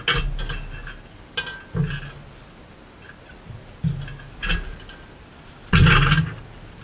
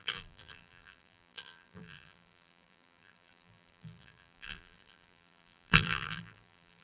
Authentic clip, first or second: first